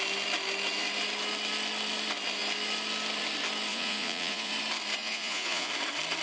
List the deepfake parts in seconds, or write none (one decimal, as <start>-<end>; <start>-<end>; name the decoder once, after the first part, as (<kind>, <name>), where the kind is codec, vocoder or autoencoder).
3.7-4.5 (vocoder, Vocos); 5.0-5.7